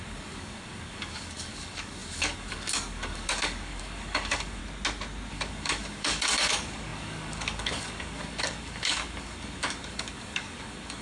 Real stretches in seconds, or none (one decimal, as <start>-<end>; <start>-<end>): 4.6-5.3